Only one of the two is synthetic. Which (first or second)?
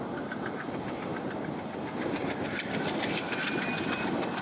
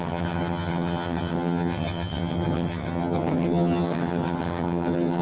second